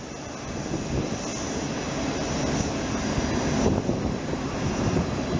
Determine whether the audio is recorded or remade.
recorded